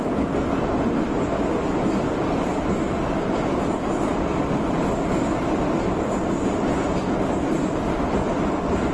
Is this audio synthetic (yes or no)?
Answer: no